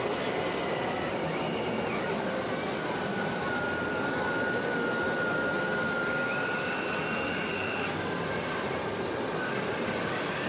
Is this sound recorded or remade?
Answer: recorded